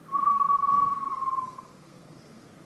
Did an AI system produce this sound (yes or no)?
yes